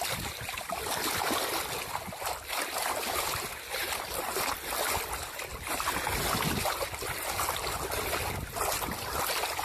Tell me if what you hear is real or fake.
real